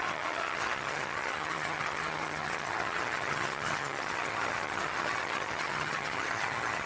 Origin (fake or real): fake